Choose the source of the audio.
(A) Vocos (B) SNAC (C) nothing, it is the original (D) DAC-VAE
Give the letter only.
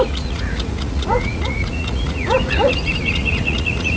A